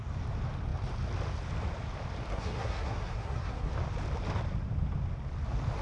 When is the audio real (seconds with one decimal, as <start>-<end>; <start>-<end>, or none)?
0.0-2.3; 3.7-5.8